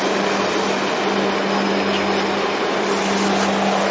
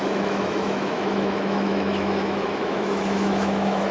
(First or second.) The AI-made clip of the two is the second